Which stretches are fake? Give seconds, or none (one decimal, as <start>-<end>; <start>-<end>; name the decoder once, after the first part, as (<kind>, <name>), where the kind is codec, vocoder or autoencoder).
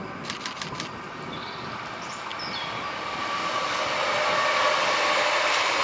none